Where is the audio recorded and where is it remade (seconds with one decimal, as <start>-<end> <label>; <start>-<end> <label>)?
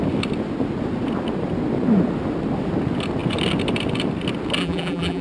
0.0-4.6 recorded; 4.6-5.2 remade